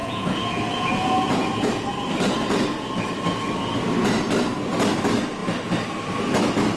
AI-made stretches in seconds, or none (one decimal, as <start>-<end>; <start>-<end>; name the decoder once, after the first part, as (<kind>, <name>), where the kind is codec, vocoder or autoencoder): 0.0-1.7 (vocoder, Vocos)